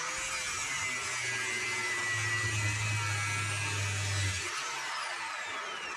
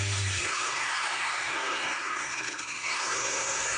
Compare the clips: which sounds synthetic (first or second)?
second